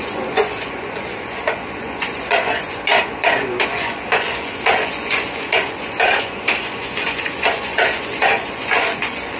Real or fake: fake